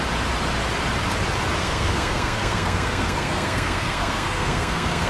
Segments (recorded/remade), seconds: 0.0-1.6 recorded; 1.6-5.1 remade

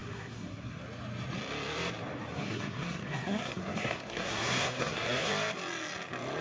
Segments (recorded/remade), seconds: 0.0-0.8 remade; 0.8-2.3 recorded; 2.3-5.3 remade; 5.3-6.4 recorded

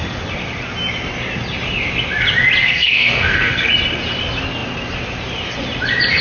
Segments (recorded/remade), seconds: 0.0-2.6 recorded; 2.6-3.7 remade; 3.7-6.2 recorded

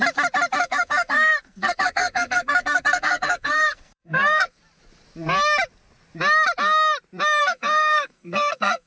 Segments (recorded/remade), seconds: 0.0-0.6 recorded; 0.6-4.6 remade; 4.6-7.4 recorded; 7.4-8.9 remade

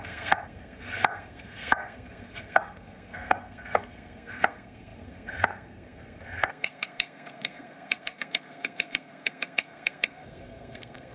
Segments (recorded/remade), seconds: 0.0-11.1 remade

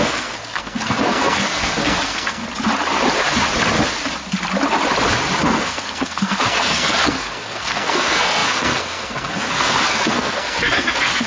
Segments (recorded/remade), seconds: 0.0-2.4 remade; 2.4-5.4 recorded; 5.4-11.3 remade